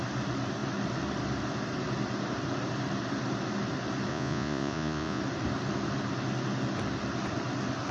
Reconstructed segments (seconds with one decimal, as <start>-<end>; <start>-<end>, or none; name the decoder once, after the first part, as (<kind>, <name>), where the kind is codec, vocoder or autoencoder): 4.1-5.2 (vocoder, Vocos)